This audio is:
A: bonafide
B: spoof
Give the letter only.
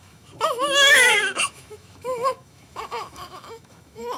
B